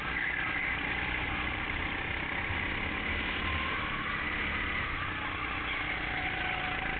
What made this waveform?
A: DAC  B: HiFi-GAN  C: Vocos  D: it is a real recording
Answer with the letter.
D